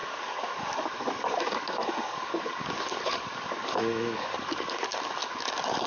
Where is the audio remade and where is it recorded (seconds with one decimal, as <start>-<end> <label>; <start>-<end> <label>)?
0.0-5.9 remade